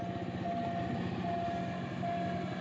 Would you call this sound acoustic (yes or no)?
yes